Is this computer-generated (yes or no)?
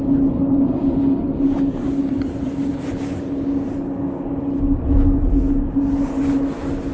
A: no